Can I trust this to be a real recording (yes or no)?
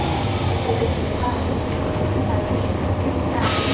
yes